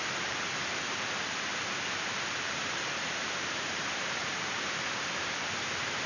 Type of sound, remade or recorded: remade